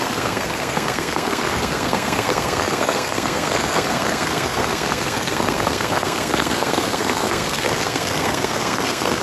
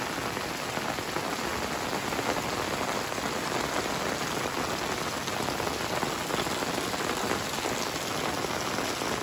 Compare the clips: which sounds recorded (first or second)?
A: second